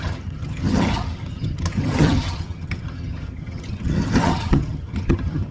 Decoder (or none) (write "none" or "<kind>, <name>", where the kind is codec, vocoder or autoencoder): vocoder, HiFi-GAN